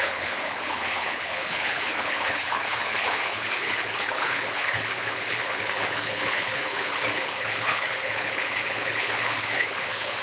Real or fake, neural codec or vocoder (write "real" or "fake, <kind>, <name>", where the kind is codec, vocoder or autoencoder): fake, codec, HILCodec